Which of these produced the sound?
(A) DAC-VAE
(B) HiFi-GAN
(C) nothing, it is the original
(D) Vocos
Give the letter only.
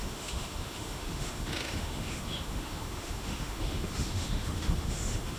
A